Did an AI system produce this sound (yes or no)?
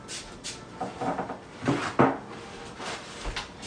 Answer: no